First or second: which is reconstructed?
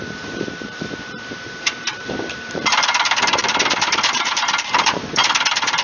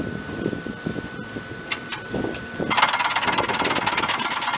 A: first